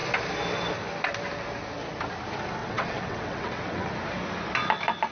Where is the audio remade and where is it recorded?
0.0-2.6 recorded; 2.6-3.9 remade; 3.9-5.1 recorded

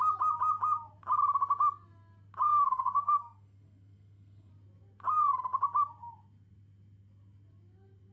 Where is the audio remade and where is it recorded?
0.0-2.5 recorded; 2.5-4.5 remade; 4.5-8.1 recorded

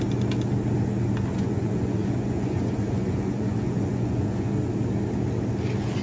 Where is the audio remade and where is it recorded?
0.0-1.3 recorded; 1.3-4.5 remade; 4.5-6.0 recorded

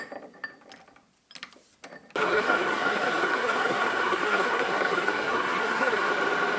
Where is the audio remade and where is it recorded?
0.0-2.2 recorded; 2.2-6.1 remade; 6.1-6.6 recorded

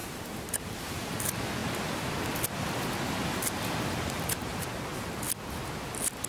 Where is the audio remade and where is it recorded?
0.0-1.2 remade; 1.2-6.3 recorded

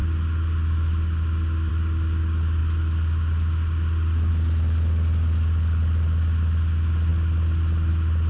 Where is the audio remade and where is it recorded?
0.0-8.3 recorded